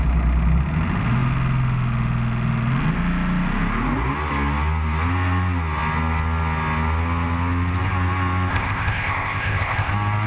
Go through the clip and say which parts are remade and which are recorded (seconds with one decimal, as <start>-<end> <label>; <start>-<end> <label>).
0.0-8.5 recorded; 8.5-9.9 remade; 9.9-10.3 recorded